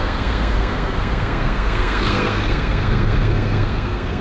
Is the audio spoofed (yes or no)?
yes